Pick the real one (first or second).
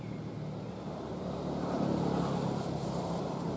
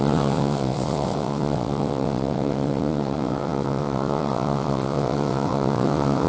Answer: first